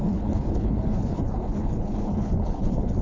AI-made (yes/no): yes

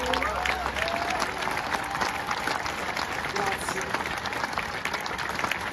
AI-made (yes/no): no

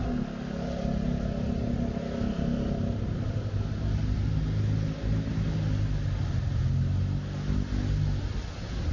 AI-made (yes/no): no